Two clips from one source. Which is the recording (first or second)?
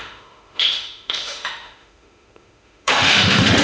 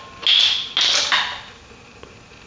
second